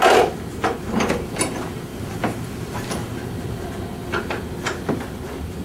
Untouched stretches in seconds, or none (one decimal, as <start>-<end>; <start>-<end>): 0.0-5.6